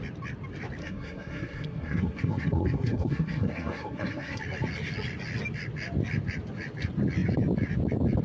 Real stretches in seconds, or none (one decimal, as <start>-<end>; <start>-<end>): 0.0-0.8; 4.4-8.2